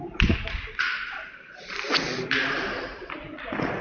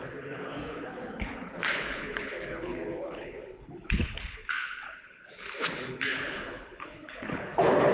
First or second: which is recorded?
first